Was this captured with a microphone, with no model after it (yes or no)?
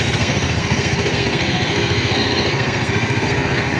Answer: no